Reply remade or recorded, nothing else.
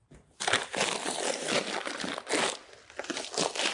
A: recorded